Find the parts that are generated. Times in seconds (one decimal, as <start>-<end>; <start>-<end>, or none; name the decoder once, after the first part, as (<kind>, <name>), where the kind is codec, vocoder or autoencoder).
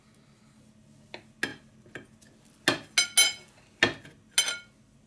none